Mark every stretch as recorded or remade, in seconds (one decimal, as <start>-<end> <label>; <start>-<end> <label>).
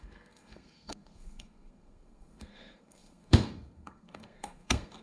0.0-5.0 remade